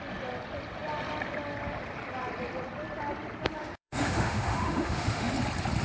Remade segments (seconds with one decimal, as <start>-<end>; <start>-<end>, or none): 3.6-5.3